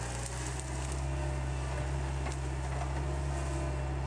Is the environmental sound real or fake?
real